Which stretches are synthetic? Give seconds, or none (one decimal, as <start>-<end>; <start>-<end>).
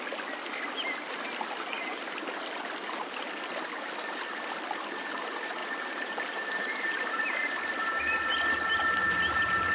5.6-8.0